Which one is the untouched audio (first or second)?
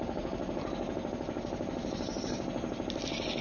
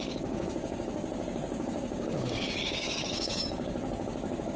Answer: first